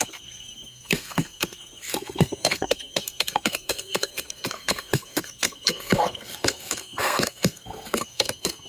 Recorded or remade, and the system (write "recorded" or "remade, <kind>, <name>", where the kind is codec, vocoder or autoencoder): remade, codec, SNAC